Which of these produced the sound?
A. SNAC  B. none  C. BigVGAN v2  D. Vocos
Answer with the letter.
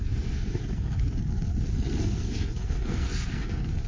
A